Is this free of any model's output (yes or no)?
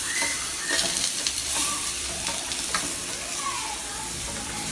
no